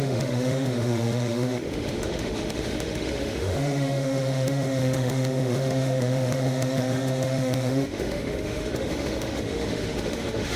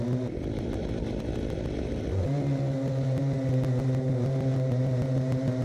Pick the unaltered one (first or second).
second